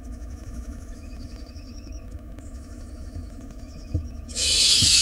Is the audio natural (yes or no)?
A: no